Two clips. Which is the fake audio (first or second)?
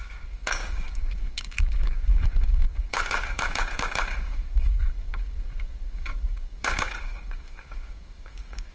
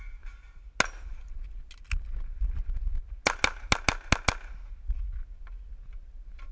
first